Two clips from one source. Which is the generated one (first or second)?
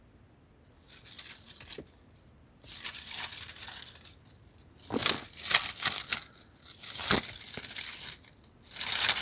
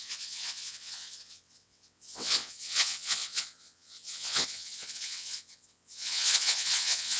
second